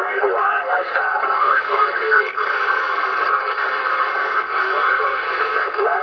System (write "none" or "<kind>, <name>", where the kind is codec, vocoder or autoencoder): codec, SNAC